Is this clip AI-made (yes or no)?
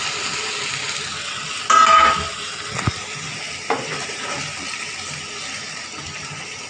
no